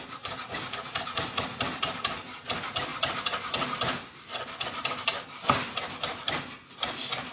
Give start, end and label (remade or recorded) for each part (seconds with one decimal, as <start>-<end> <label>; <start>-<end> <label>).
0.0-7.3 recorded